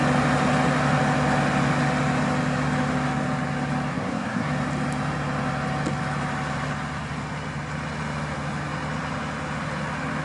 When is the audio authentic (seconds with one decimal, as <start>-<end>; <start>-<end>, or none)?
0.0-3.9; 4.5-10.2